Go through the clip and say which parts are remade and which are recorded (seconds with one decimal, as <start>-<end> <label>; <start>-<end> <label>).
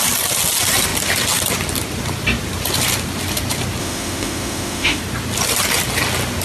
0.0-3.8 recorded; 3.8-5.0 remade; 5.0-6.4 recorded